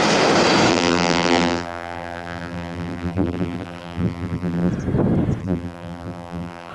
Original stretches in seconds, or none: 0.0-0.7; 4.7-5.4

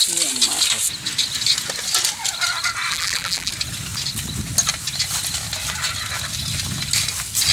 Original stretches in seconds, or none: 0.0-2.9; 3.5-7.5

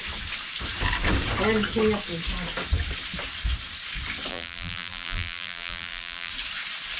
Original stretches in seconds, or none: 0.0-4.3; 6.3-7.0